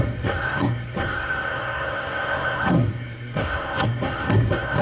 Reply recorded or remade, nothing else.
remade